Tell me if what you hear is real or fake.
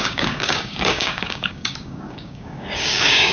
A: fake